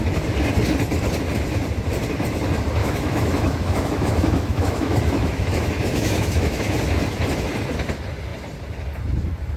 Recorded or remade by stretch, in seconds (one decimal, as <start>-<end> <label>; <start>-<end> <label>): 0.0-2.8 recorded; 2.8-6.8 remade; 6.8-9.6 recorded